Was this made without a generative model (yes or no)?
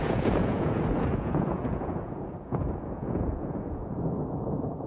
no